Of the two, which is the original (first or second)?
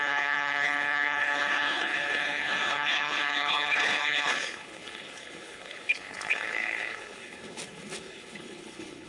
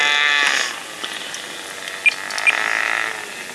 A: second